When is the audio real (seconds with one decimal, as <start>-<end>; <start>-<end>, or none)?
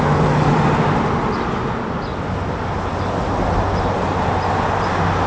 0.0-5.3